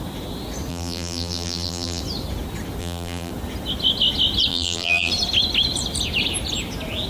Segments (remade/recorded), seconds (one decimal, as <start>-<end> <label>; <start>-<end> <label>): 0.0-0.7 recorded; 0.7-2.0 remade; 2.0-2.8 recorded; 2.8-3.3 remade; 3.3-4.5 recorded; 4.5-5.1 remade; 5.1-7.1 recorded